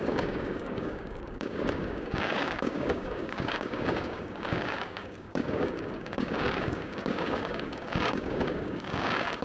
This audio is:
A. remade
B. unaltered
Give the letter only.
A